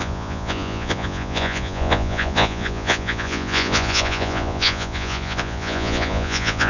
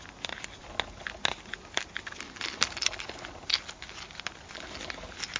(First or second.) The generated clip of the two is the first